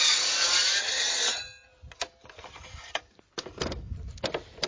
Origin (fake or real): real